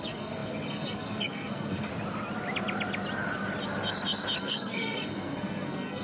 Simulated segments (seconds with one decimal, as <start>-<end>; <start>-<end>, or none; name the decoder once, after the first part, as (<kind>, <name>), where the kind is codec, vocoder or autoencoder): 0.0-1.9 (codec, SNAC); 4.4-6.0